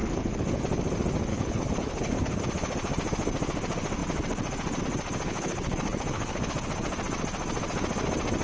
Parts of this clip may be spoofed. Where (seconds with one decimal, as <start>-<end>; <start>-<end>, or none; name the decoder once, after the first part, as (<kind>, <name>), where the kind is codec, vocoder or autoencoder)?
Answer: 0.0-0.6 (codec, HILCodec); 1.3-2.4; 5.3-6.7